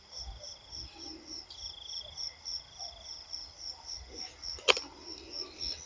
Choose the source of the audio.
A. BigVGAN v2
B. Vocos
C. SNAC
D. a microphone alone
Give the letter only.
D